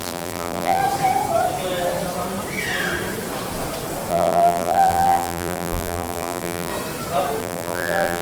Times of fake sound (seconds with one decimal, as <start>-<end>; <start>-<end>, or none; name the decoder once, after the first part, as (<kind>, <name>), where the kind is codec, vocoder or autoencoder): 0.0-0.8 (vocoder, BigVGAN v2); 4.1-6.7; 7.4-8.2